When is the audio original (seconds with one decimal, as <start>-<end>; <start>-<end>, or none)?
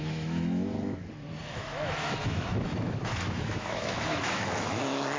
0.7-1.4